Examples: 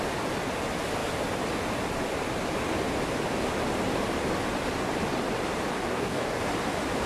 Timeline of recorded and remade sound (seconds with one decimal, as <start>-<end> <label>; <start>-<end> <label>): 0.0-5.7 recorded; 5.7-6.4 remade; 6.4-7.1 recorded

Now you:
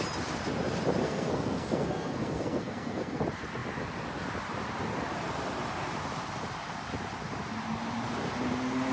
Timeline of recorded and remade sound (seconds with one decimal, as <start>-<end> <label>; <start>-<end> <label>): 0.0-1.0 recorded; 1.0-3.2 remade; 3.2-8.9 recorded

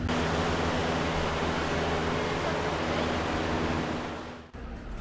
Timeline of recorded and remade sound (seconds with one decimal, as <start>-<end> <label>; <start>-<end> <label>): 0.0-5.0 recorded

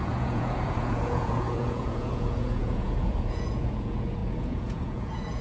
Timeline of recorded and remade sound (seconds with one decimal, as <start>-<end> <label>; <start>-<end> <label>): 0.0-5.4 remade

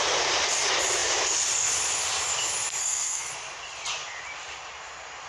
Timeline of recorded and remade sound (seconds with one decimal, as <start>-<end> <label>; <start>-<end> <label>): 0.0-2.8 recorded; 2.8-3.3 remade; 3.3-5.3 recorded

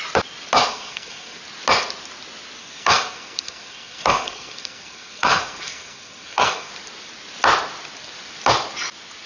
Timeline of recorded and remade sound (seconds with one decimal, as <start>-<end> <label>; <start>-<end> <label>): 0.0-0.7 recorded; 0.7-1.4 remade; 1.4-2.6 recorded; 2.6-6.7 remade; 6.7-9.3 recorded

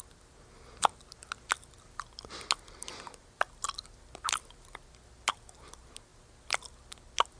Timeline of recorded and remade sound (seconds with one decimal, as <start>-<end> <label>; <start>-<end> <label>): 0.0-7.4 recorded